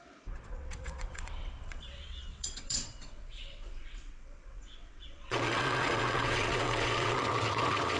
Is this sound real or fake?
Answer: fake